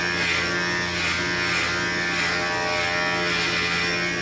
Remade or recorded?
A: recorded